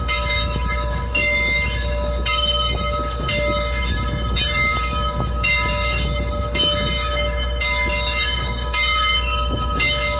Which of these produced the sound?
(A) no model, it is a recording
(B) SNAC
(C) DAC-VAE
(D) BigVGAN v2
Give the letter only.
C